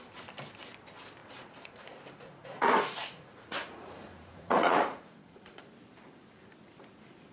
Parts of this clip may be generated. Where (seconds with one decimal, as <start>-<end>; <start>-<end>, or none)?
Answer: 1.2-5.6